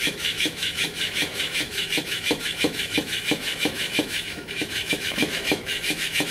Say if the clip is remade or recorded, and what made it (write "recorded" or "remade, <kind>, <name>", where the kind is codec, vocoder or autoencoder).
remade, autoencoder, DAC-VAE